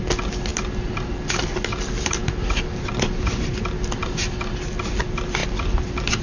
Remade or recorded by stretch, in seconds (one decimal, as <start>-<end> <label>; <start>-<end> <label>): 0.0-6.2 recorded